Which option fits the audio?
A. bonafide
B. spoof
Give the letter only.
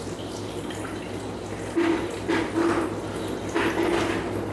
A